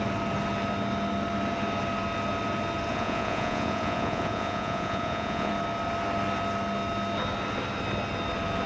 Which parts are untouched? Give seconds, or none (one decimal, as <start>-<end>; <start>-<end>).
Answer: 0.0-2.9; 5.5-8.7